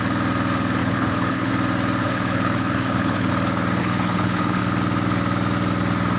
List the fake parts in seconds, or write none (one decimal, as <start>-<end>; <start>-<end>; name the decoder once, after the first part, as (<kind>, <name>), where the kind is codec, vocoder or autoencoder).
0.8-1.5 (codec, HILCodec); 2.0-3.3; 3.8-4.6